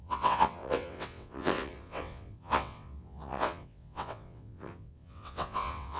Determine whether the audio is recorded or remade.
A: remade